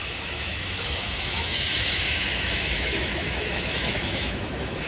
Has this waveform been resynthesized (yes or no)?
yes